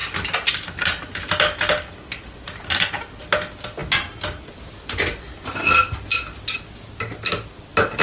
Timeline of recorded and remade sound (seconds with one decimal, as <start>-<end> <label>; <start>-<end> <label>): 0.0-8.0 recorded